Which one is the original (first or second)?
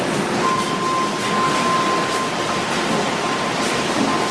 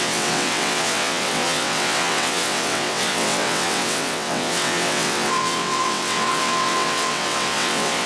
first